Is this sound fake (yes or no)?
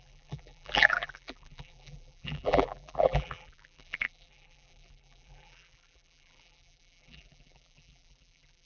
yes